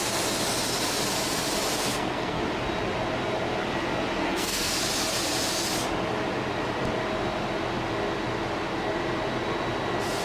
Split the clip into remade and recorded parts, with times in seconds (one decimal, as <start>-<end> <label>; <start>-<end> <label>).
0.0-1.9 recorded; 1.9-2.4 remade; 2.4-4.2 recorded; 4.2-4.8 remade; 4.8-10.2 recorded